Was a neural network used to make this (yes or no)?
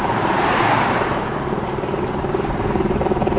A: yes